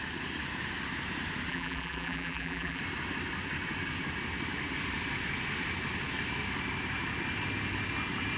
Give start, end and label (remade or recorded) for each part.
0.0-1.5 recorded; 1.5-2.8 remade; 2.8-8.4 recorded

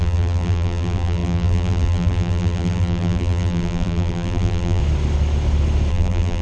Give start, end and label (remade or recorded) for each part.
0.0-4.8 remade; 4.8-5.9 recorded; 5.9-6.4 remade

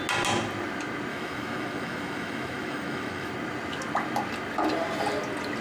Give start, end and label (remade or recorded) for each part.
0.0-1.1 recorded; 1.1-3.3 remade; 3.3-5.6 recorded

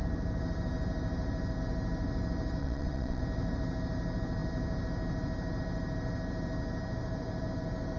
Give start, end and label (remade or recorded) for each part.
0.0-2.6 recorded; 2.6-3.2 remade; 3.2-8.0 recorded

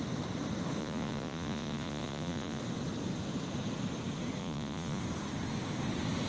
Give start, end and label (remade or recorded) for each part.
0.0-0.8 recorded; 0.8-2.6 remade; 2.6-4.4 recorded; 4.4-5.0 remade; 5.0-6.3 recorded

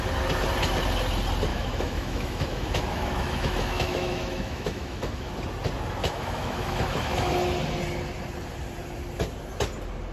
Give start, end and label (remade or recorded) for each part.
0.0-1.5 recorded; 1.5-5.3 remade; 5.3-6.0 recorded; 6.0-7.3 remade; 7.3-10.1 recorded